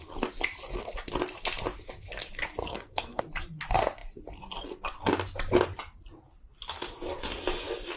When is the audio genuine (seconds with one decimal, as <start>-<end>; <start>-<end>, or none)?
0.0-2.6; 3.2-8.0